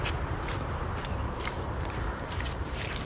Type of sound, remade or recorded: remade